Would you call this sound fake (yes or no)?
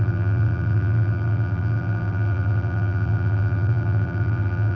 yes